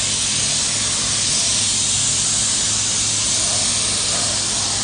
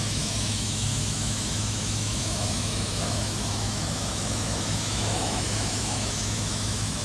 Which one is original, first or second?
first